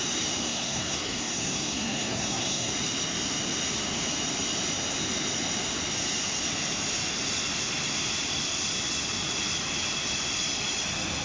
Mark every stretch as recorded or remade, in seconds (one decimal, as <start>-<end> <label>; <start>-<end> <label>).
0.0-0.4 recorded; 0.4-2.7 remade; 2.7-11.2 recorded